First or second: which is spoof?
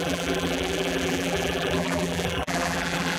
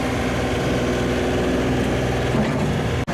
first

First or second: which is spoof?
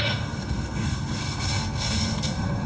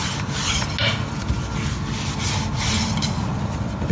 first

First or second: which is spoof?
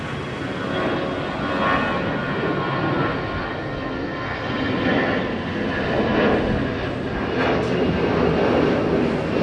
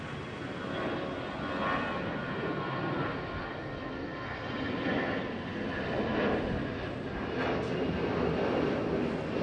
second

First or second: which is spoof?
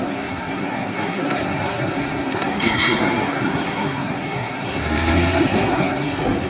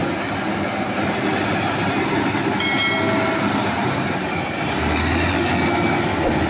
first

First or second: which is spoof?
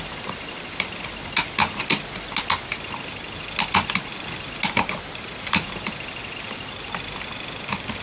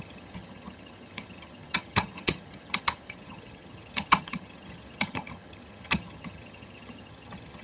second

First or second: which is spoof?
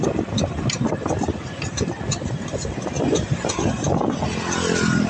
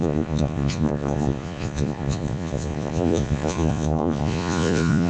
second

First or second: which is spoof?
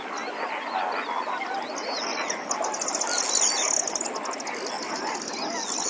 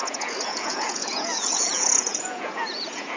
second